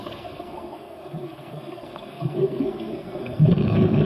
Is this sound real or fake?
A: fake